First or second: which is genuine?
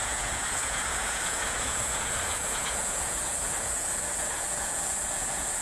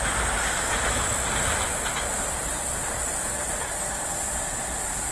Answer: second